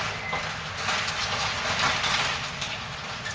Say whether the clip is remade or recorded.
recorded